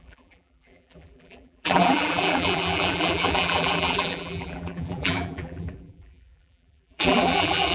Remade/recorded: remade